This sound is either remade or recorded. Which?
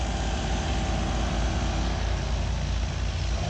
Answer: recorded